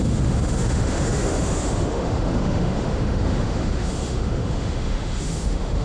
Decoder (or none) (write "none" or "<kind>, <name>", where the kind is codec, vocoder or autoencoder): autoencoder, DAC-VAE